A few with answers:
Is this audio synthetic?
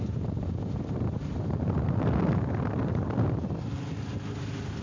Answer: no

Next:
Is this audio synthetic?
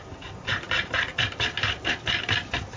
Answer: no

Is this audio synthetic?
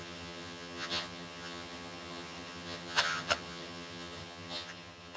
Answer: yes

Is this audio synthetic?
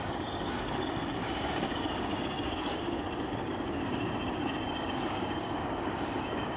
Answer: yes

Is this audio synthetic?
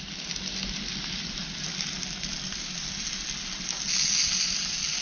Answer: no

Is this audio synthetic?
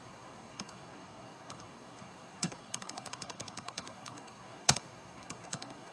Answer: yes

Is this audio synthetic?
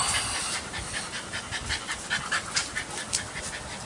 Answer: no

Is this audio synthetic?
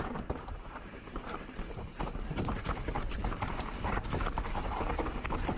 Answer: yes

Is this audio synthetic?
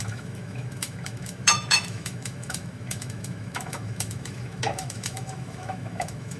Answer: yes